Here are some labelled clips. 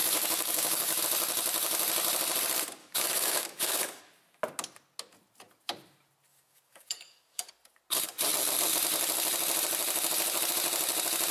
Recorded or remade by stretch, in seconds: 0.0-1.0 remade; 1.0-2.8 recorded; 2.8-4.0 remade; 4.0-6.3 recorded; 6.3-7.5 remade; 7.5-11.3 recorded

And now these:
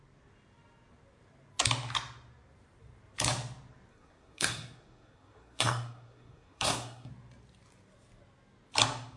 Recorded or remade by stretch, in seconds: 0.0-3.9 recorded; 3.9-7.1 remade; 7.1-9.2 recorded

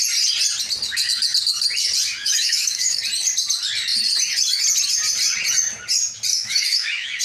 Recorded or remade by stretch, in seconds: 0.0-2.2 recorded; 2.2-3.0 remade; 3.0-6.3 recorded; 6.3-7.2 remade